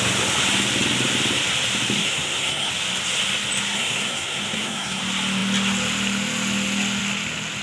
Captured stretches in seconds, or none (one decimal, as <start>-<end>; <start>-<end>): 0.0-2.0; 2.7-3.7; 5.0-7.6